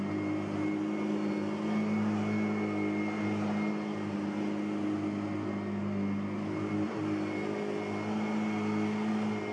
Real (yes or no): yes